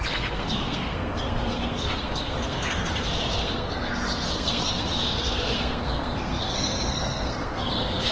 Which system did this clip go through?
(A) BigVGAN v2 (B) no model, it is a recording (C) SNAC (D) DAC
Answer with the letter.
C